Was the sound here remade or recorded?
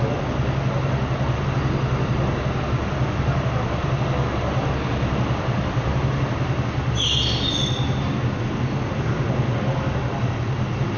recorded